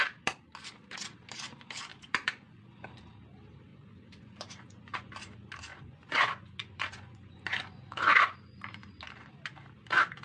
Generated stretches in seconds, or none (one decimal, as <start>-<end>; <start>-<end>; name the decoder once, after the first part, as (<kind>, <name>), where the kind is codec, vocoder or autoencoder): 1.9-2.6 (vocoder, Vocos); 3.7-5.1; 5.7-9.0